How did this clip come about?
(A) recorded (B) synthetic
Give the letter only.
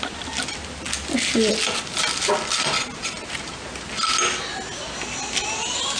A